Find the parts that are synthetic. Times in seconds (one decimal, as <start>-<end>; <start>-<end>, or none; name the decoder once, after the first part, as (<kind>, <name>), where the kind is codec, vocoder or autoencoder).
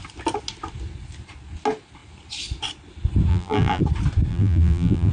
3.3-3.8 (vocoder, BigVGAN v2); 4.3-5.1